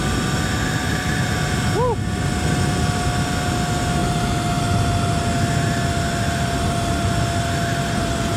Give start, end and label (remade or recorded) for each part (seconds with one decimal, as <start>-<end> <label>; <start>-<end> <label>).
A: 0.0-8.4 recorded